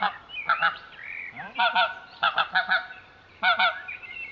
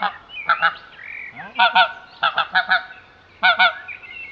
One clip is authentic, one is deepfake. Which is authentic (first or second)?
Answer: second